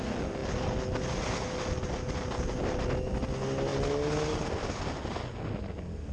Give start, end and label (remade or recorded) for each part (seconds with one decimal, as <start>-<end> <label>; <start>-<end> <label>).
0.0-6.1 recorded